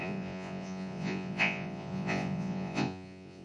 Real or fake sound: fake